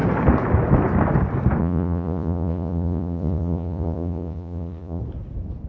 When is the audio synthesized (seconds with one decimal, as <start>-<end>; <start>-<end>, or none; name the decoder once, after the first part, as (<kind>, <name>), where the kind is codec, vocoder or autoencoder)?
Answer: 1.6-5.0 (vocoder, Vocos)